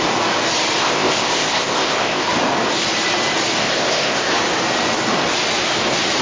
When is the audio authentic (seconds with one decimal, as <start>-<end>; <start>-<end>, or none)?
0.0-0.8; 2.3-3.6; 4.3-6.2